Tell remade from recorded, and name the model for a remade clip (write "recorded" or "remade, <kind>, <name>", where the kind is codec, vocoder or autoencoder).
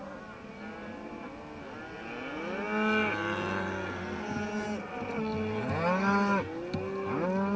recorded